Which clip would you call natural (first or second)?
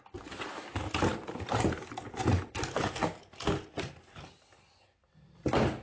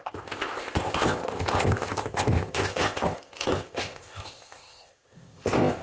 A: first